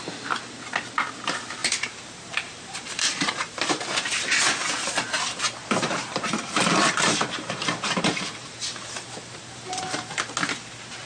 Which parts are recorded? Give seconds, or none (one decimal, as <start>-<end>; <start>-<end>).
0.0-1.6; 3.8-5.6; 10.3-11.1